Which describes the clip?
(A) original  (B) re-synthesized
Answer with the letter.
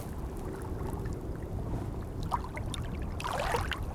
A